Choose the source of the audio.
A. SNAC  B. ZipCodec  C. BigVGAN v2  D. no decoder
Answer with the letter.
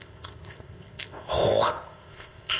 B